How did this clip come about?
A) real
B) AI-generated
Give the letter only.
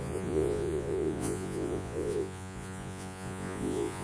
B